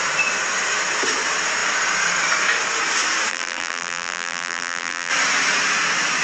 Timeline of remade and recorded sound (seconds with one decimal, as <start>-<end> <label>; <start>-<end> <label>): 0.0-3.3 recorded; 3.3-5.1 remade; 5.1-6.2 recorded